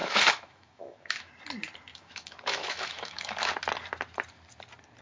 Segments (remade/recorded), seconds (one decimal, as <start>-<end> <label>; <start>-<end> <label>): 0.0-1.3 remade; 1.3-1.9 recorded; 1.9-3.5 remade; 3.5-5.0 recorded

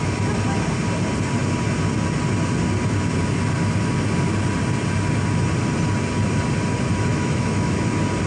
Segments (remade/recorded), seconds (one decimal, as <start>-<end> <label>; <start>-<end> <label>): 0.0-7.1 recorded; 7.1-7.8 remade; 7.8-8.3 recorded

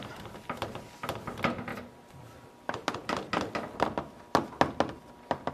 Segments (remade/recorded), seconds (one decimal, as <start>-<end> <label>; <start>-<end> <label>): 0.0-5.5 recorded

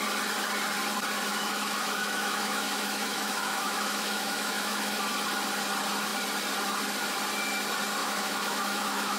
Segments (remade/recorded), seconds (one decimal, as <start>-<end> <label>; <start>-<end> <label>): 0.0-1.3 recorded; 1.3-5.0 remade; 5.0-8.0 recorded; 8.0-9.2 remade

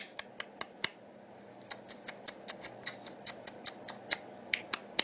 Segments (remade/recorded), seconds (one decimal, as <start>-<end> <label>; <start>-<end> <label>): 0.0-5.0 recorded

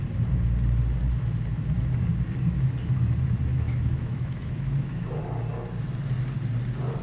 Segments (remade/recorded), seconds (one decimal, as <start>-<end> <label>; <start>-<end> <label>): 0.0-3.5 recorded; 3.5-5.2 remade; 5.2-7.0 recorded